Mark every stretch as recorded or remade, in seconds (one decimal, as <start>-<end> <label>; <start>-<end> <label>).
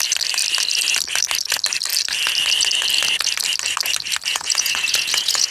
0.0-4.3 recorded; 4.3-5.5 remade